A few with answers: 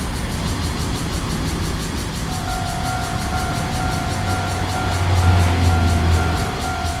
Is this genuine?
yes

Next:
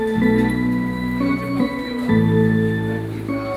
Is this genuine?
yes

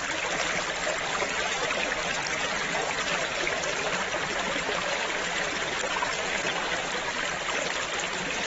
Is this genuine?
yes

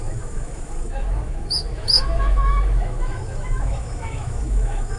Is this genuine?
no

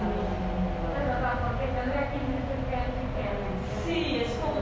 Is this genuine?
yes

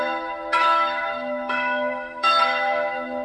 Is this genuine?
no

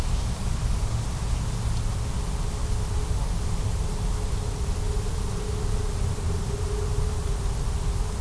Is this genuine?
yes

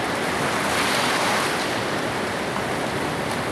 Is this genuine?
yes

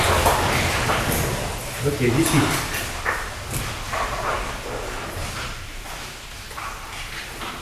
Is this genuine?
yes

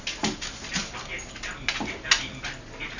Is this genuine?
yes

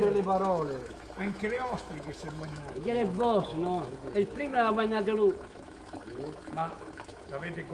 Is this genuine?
no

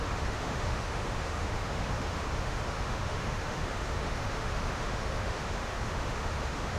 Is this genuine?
no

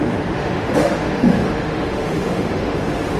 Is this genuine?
no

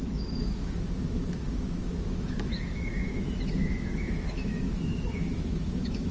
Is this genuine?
no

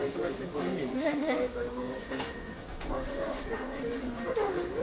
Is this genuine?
no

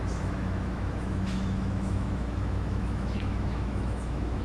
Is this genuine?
no